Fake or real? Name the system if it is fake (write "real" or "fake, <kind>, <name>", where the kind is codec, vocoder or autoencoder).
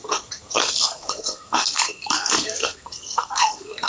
fake, codec, SNAC